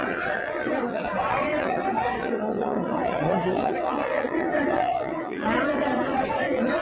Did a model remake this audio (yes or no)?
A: yes